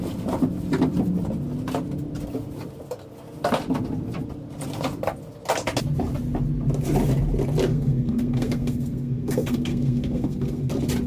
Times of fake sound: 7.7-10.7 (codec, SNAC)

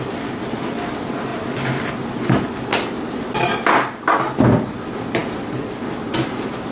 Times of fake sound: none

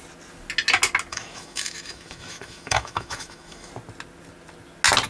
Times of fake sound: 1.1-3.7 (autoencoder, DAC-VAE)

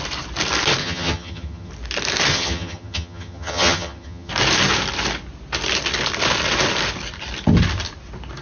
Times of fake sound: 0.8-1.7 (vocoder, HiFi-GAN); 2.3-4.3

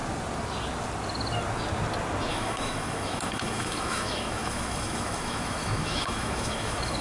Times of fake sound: 2.3-7.0 (autoencoder, DAC-VAE)

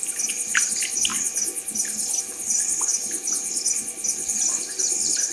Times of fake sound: none

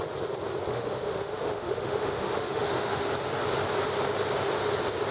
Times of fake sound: 0.7-3.1 (autoencoder, DAC-VAE)

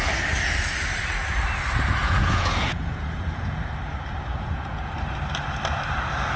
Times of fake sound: 2.0-3.7 (vocoder, Vocos); 4.3-4.9